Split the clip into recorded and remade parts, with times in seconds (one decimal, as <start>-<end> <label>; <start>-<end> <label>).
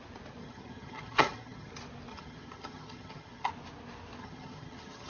0.0-0.4 recorded; 0.4-1.7 remade; 1.7-2.1 recorded; 2.1-3.5 remade; 3.5-4.2 recorded; 4.2-5.1 remade